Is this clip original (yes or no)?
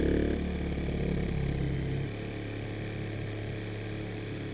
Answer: yes